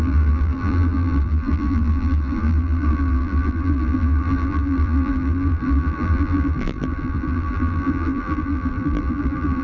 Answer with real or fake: fake